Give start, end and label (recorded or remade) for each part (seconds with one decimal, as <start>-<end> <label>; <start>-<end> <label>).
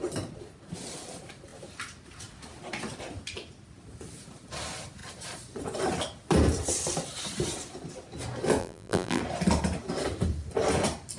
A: 0.0-8.6 recorded; 8.6-9.2 remade; 9.2-11.2 recorded